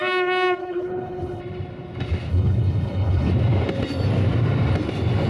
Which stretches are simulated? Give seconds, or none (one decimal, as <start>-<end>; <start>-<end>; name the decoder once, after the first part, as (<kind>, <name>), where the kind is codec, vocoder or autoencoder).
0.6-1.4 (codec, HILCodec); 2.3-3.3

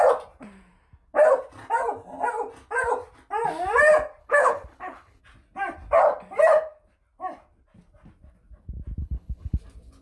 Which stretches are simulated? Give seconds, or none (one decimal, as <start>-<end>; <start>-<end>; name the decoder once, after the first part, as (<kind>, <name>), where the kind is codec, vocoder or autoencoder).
4.2-5.2 (codec, HILCodec); 9.0-9.6

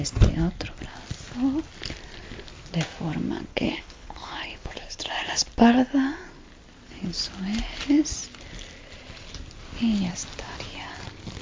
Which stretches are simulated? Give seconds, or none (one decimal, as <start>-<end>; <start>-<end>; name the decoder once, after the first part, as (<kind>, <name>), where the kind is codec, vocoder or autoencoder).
3.5-5.0 (codec, HILCodec)